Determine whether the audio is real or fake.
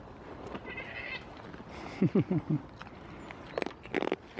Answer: real